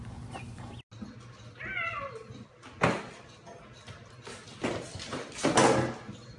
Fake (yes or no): no